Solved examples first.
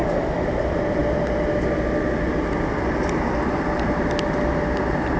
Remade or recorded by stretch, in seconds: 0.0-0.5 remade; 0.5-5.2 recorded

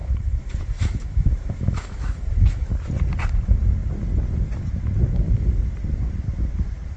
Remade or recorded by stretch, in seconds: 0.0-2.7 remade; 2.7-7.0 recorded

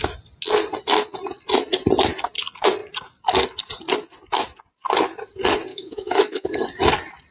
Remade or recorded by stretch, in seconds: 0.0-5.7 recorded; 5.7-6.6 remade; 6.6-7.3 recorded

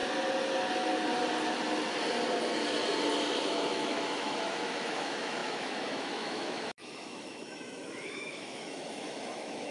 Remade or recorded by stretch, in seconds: 0.0-3.5 recorded; 3.5-9.7 remade

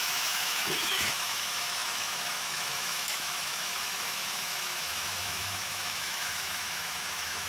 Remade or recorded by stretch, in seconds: 0.0-7.5 remade

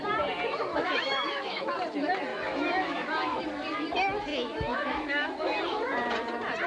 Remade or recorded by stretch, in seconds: 0.0-0.7 recorded; 0.7-1.7 remade; 1.7-2.3 recorded; 2.3-3.4 remade; 3.4-4.3 recorded; 4.3-5.6 remade; 5.6-6.7 recorded